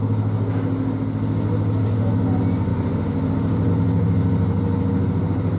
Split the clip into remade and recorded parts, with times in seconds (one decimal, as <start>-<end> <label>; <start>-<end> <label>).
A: 0.0-5.6 recorded